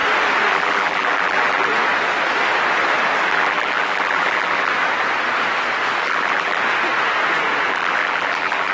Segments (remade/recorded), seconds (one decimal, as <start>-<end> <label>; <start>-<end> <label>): 0.0-0.5 recorded; 0.5-1.7 remade; 1.7-3.3 recorded; 3.3-4.7 remade; 4.7-6.0 recorded; 6.0-6.6 remade; 6.6-7.7 recorded; 7.7-8.7 remade